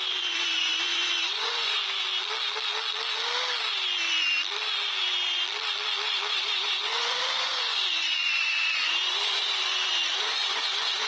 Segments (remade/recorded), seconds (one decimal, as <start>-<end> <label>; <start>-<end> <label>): 0.0-1.8 remade; 1.8-6.3 recorded; 6.3-11.1 remade